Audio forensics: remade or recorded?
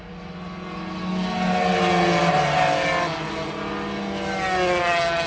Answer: recorded